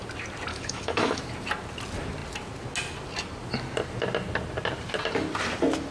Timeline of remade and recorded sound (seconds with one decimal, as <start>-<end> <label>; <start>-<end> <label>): 0.0-0.5 recorded; 0.5-1.2 remade; 1.2-5.9 recorded